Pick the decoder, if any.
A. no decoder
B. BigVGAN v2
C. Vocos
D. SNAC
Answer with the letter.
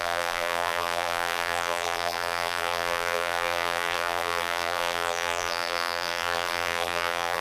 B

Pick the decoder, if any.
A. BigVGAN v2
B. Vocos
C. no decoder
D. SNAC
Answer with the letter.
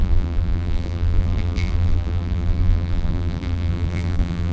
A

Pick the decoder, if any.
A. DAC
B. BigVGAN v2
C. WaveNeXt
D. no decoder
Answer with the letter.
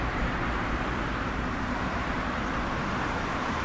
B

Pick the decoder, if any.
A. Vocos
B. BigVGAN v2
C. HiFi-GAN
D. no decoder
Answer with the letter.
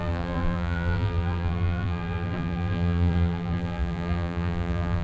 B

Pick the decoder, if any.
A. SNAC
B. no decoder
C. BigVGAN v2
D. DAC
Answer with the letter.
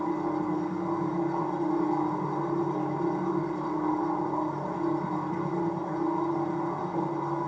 B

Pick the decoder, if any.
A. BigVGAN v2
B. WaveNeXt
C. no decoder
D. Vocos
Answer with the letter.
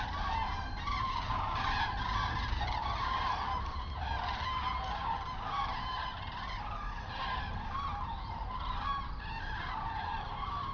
A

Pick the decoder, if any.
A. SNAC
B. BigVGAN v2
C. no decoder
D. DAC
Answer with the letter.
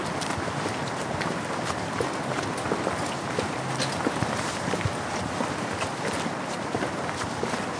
C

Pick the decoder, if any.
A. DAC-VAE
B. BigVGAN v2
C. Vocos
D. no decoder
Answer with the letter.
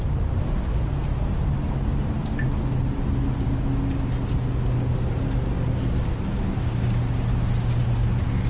D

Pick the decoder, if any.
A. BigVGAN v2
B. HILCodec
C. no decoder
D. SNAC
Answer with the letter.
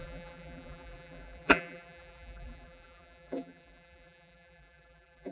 A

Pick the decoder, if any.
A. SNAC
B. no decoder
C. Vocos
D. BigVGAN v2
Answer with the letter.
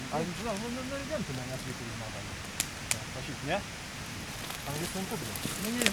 B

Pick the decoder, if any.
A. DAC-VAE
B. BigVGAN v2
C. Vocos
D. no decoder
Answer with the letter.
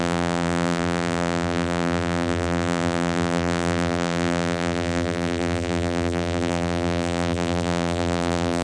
B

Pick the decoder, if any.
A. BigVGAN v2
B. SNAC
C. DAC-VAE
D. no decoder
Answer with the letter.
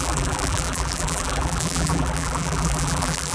A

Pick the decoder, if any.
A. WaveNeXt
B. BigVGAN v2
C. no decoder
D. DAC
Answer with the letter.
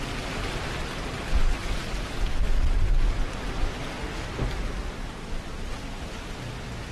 C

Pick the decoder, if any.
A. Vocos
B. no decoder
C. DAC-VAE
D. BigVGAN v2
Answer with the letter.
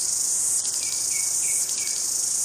D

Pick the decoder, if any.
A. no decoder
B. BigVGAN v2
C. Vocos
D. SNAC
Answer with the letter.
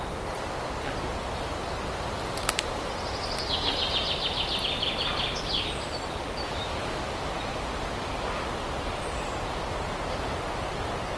A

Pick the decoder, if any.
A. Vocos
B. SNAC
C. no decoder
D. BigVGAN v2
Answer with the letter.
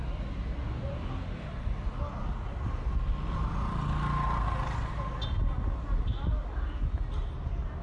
C